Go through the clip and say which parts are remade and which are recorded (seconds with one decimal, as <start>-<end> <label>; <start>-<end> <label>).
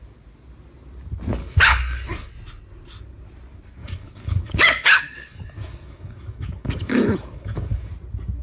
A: 0.0-1.4 recorded; 1.4-2.3 remade; 2.3-3.8 recorded; 3.8-7.9 remade; 7.9-8.4 recorded